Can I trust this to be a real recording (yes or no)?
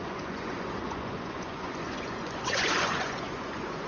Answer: no